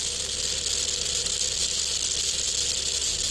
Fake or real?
real